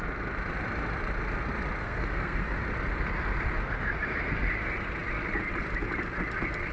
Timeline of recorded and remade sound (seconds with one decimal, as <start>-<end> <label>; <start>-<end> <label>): 0.0-1.8 recorded; 1.8-2.6 remade; 2.6-6.7 recorded

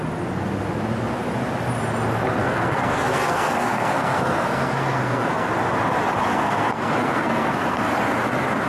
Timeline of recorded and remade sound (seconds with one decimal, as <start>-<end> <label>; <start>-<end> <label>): 0.0-2.4 recorded; 2.4-5.5 remade; 5.5-6.3 recorded; 6.3-7.9 remade; 7.9-8.7 recorded

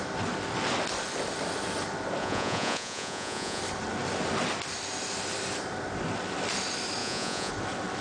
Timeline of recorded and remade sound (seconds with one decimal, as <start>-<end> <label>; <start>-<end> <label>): 0.0-2.2 recorded; 2.2-3.6 remade; 3.6-7.0 recorded; 7.0-7.5 remade; 7.5-8.0 recorded

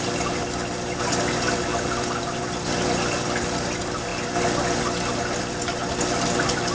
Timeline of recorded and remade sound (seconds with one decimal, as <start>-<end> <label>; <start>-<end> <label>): 0.0-6.7 recorded

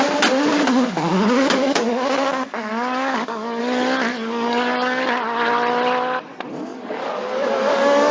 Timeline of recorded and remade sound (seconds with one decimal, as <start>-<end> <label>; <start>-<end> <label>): 0.0-0.5 recorded; 0.5-3.6 remade; 3.6-4.1 recorded; 4.1-5.0 remade; 5.0-6.7 recorded; 6.7-8.1 remade

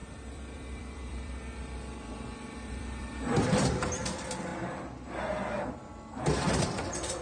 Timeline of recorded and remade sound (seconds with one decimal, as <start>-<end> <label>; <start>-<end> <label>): 0.0-4.5 remade; 4.5-6.4 recorded; 6.4-7.2 remade

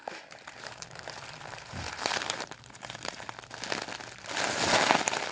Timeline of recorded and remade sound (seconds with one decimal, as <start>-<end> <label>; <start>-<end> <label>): 0.0-3.2 remade; 3.2-5.3 recorded

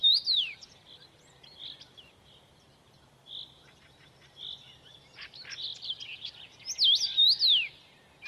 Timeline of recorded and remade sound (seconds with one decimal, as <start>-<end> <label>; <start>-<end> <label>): 0.0-4.9 remade; 4.9-5.7 recorded; 5.7-6.3 remade; 6.3-8.3 recorded